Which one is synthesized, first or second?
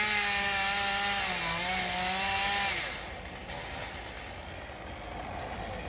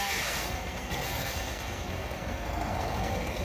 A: second